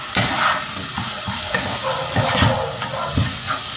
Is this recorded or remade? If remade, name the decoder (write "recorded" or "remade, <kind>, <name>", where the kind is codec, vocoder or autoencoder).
recorded